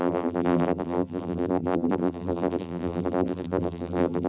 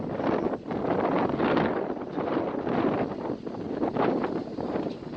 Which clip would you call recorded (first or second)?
second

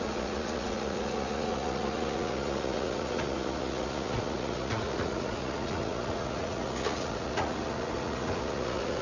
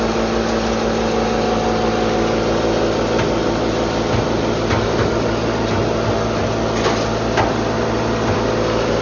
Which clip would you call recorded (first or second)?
second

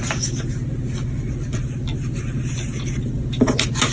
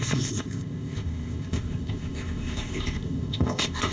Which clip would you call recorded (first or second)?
first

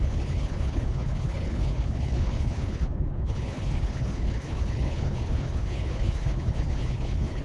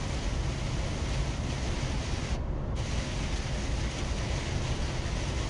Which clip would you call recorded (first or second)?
second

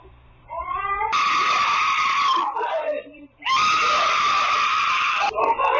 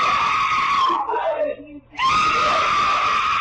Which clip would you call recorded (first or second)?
second